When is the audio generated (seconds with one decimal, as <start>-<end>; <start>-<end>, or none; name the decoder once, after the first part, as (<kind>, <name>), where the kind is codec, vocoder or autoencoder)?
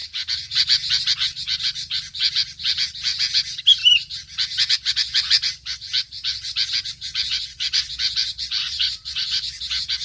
7.3-7.9 (vocoder, Vocos); 8.6-9.6